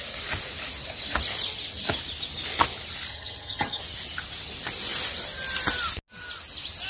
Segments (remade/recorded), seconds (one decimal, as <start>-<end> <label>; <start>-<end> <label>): 0.0-3.1 recorded; 3.1-3.8 remade; 3.8-6.9 recorded